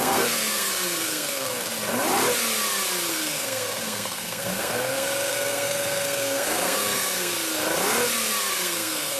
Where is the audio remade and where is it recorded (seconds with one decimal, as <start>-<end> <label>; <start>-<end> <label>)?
0.0-1.7 remade; 1.7-3.1 recorded; 3.1-7.3 remade; 7.3-8.5 recorded; 8.5-9.2 remade